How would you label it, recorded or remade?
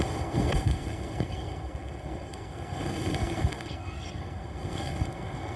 remade